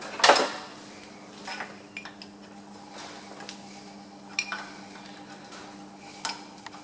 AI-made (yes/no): no